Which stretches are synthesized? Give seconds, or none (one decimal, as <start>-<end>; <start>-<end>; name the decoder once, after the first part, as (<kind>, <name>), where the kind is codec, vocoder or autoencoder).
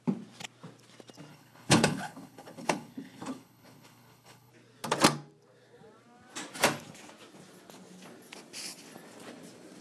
1.3-4.5 (codec, HILCodec)